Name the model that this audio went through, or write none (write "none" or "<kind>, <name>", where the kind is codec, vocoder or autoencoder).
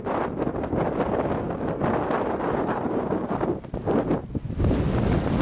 none